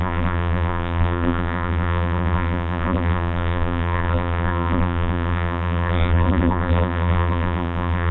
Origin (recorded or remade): remade